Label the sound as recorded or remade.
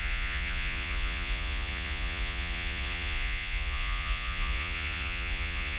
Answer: remade